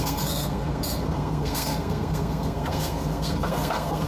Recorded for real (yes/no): no